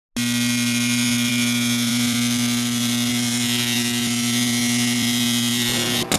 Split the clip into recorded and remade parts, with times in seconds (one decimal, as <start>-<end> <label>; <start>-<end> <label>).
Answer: 0.0-6.2 recorded